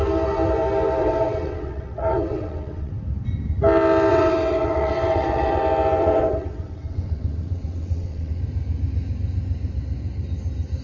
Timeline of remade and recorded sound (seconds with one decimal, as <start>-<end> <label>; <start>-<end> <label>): 0.0-1.0 recorded; 1.0-2.9 remade; 2.9-4.1 recorded; 4.1-5.6 remade; 5.6-6.0 recorded; 6.0-8.4 remade; 8.4-10.8 recorded